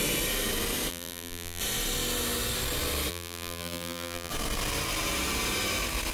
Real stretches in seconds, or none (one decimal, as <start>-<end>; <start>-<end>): 0.0-0.9; 1.6-3.1; 4.3-6.1